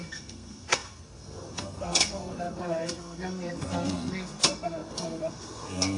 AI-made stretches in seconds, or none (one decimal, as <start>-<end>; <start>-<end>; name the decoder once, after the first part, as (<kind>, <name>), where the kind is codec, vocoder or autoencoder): 0.0-6.0 (codec, SNAC)